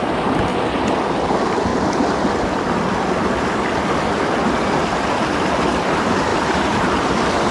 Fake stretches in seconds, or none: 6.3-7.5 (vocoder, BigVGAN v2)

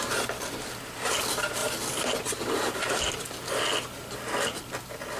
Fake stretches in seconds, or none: none